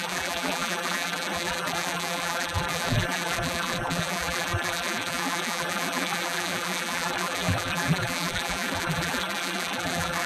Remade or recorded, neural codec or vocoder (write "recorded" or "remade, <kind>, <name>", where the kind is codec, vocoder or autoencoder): remade, vocoder, BigVGAN v2